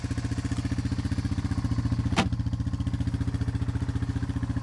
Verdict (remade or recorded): recorded